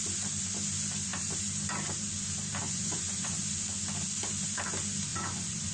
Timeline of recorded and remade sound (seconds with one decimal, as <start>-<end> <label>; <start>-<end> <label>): 0.0-2.6 recorded; 2.6-3.4 remade; 3.4-5.1 recorded; 5.1-5.7 remade